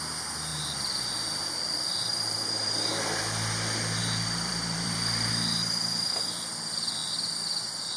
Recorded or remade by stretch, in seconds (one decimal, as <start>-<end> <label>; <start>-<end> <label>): 0.0-0.5 recorded; 0.5-2.9 remade; 2.9-4.0 recorded; 4.0-5.3 remade; 5.3-8.0 recorded